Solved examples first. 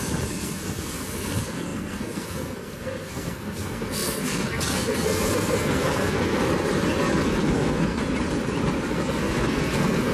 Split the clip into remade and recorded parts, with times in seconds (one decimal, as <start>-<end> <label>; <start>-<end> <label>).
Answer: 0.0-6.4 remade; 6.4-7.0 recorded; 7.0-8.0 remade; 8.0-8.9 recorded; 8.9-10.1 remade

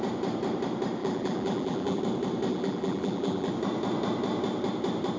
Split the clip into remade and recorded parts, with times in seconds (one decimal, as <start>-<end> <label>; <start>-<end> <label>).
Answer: 0.0-1.0 recorded; 1.0-2.0 remade; 2.0-2.5 recorded; 2.5-3.5 remade; 3.5-5.2 recorded

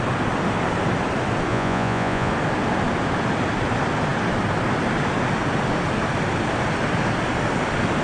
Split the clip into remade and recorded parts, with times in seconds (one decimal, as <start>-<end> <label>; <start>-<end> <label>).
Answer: 0.0-1.5 recorded; 1.5-2.3 remade; 2.3-8.0 recorded

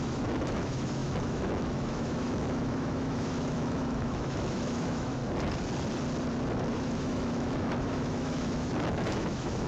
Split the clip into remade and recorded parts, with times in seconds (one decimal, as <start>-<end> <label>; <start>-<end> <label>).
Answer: 0.0-5.2 remade; 5.2-6.7 recorded; 6.7-9.7 remade

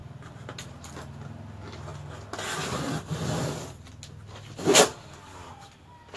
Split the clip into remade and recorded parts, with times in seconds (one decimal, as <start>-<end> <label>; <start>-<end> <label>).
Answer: 0.0-6.2 recorded

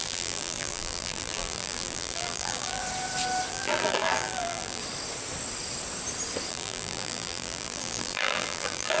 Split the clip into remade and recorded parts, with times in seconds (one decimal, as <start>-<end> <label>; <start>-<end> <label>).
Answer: 0.0-2.8 remade; 2.8-3.5 recorded; 3.5-4.8 remade; 4.8-6.5 recorded; 6.5-9.0 remade